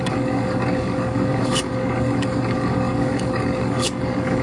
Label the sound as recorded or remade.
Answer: remade